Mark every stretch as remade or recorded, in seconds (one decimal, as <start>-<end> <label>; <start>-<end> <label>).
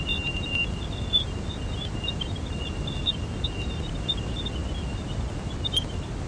0.0-6.3 recorded